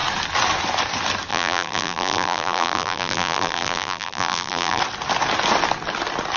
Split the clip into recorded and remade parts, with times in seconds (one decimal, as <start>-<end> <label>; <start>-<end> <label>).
0.0-1.3 recorded; 1.3-4.8 remade; 4.8-6.4 recorded